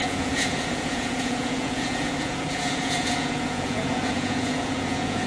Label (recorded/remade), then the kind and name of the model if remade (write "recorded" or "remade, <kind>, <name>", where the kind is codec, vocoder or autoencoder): remade, vocoder, Vocos